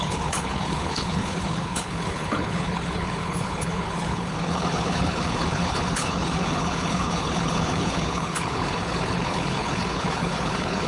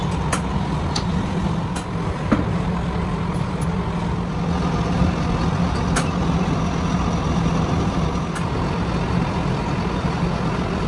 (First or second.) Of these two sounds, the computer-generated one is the first